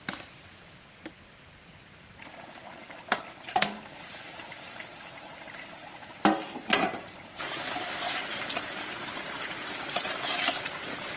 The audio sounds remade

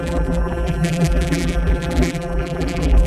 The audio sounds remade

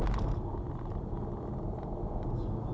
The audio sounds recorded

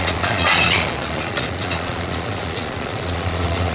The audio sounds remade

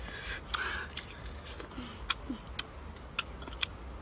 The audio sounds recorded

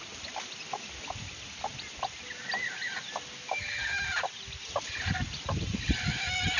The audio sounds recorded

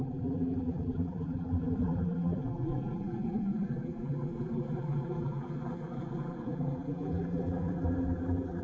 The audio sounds remade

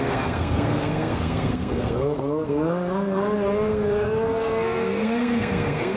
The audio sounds remade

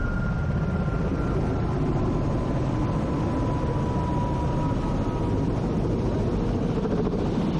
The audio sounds recorded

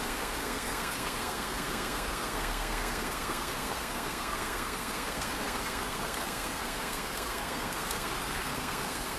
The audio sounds remade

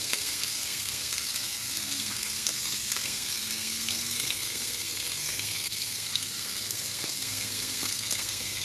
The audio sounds remade